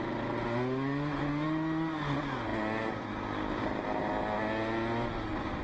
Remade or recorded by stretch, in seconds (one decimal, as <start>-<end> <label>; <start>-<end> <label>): 0.0-5.6 recorded